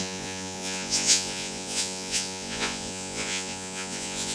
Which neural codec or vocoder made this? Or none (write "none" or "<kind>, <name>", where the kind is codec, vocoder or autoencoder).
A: vocoder, Vocos